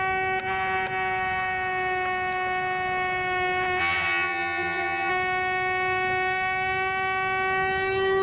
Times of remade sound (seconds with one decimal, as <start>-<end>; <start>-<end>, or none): 3.8-5.1